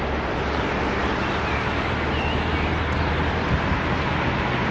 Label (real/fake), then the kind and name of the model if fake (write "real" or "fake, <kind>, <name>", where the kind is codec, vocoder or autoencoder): real